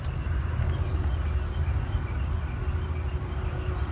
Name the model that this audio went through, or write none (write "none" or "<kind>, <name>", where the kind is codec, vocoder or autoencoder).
none